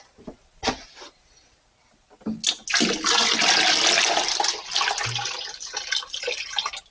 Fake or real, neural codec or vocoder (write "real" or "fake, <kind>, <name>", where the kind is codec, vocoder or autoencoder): real